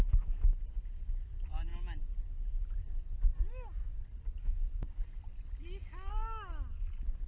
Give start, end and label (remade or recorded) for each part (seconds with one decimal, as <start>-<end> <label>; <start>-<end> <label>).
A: 0.0-7.3 recorded